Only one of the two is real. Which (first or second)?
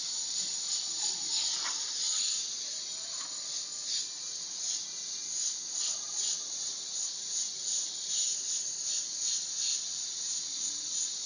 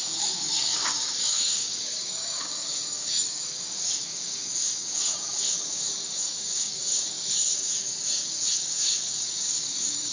first